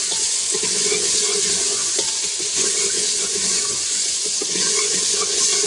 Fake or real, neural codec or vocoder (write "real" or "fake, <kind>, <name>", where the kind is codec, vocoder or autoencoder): fake, vocoder, Vocos